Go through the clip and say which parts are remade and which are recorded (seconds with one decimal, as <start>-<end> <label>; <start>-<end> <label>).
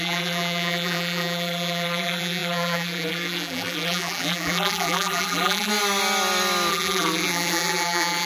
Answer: 0.0-5.7 remade; 5.7-6.7 recorded; 6.7-8.3 remade